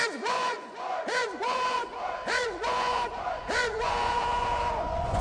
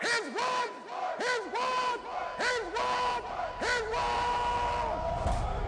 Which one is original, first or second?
second